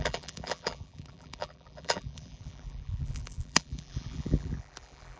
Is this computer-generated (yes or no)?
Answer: yes